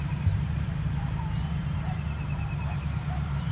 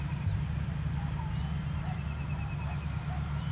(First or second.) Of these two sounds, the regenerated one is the first